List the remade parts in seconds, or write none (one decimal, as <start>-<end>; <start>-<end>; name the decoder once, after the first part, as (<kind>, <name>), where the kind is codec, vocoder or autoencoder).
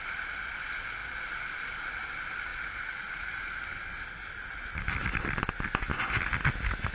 none